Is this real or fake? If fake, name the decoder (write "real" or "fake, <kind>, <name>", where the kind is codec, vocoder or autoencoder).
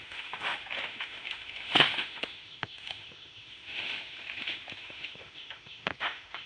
fake, autoencoder, DAC-VAE